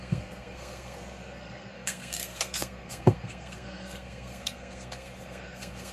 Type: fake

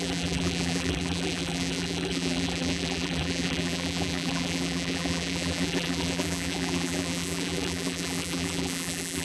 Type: fake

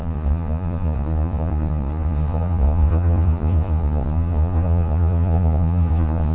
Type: fake